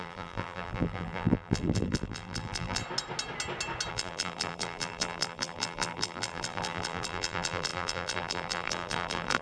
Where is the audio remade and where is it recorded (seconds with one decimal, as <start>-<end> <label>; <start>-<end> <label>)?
0.0-2.8 remade; 2.8-3.9 recorded; 3.9-9.4 remade